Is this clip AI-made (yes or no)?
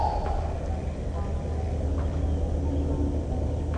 no